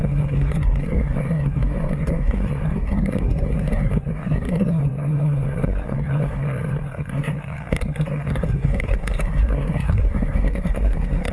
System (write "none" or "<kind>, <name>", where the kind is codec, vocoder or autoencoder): codec, SNAC